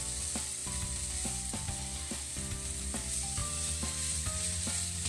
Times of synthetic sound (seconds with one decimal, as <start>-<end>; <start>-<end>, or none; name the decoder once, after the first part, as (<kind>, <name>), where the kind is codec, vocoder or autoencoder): none

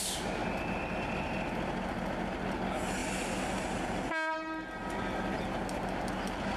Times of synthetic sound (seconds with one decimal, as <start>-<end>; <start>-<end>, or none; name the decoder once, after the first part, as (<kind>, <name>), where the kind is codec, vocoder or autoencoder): 3.0-3.8 (vocoder, BigVGAN v2); 4.8-5.4

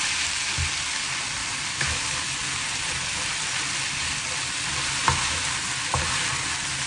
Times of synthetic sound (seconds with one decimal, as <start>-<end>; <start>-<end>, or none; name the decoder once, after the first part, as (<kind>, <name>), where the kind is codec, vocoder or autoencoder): 1.4-2.1 (vocoder, BigVGAN v2); 5.0-5.7

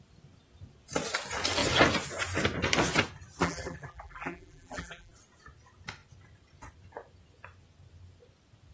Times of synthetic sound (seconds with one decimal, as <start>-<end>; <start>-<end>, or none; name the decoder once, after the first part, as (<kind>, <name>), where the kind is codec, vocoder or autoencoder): 3.4-5.1 (vocoder, BigVGAN v2)

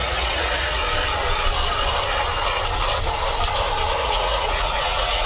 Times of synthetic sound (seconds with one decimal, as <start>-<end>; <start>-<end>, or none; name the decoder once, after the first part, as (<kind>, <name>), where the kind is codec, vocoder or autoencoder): 0.0-0.8 (vocoder, Vocos); 4.0-5.3

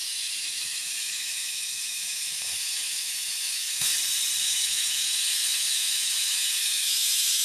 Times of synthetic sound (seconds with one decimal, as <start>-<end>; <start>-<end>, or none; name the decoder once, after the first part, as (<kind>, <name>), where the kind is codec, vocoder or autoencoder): 0.0-3.9 (autoencoder, DAC-VAE); 4.4-7.4